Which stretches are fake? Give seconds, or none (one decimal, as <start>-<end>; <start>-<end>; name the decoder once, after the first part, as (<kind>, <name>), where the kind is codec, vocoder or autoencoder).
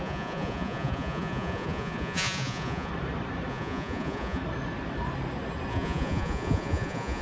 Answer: 0.0-2.9 (vocoder, Vocos); 3.5-4.4; 5.7-7.2